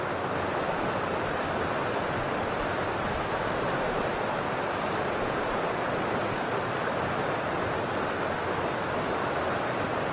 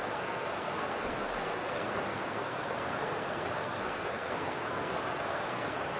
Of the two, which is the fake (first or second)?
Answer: second